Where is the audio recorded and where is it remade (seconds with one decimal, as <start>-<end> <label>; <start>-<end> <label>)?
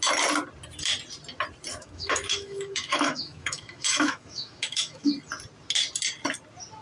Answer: 0.0-1.7 recorded; 1.7-5.1 remade; 5.1-6.8 recorded